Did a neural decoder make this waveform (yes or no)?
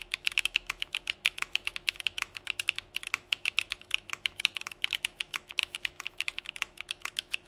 yes